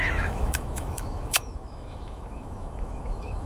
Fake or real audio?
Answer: fake